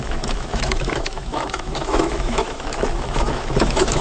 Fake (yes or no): yes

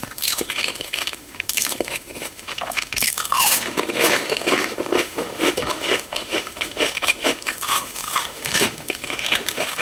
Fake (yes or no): yes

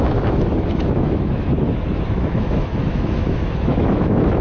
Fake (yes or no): yes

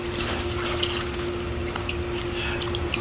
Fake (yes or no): no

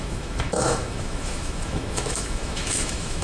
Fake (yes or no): yes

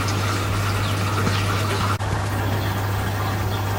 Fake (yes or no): no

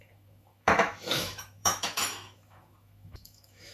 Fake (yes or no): yes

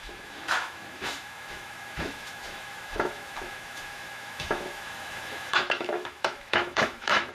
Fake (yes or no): yes